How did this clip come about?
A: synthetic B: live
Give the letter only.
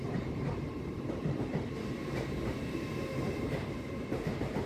A